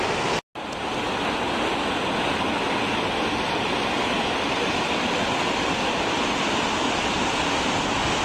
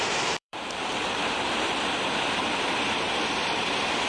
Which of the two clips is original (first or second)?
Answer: first